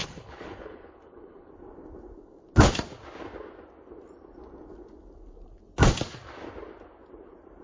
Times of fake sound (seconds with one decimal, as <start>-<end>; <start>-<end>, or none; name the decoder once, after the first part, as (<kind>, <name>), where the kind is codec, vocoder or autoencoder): 0.0-1.5 (codec, HILCodec)